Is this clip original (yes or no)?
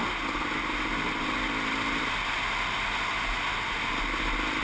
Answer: yes